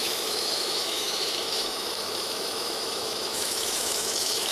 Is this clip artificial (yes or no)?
yes